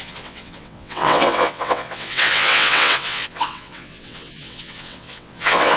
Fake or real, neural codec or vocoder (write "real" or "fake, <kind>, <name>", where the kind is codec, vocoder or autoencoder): fake, vocoder, WaveNeXt